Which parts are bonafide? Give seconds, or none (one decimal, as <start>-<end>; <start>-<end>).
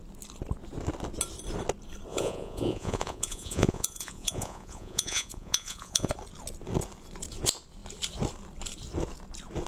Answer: 0.0-2.1; 6.1-9.7